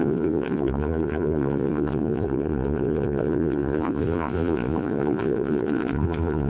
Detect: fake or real fake